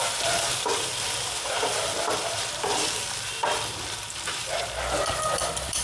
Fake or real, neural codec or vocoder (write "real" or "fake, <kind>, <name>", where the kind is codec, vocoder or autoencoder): fake, vocoder, BigVGAN v2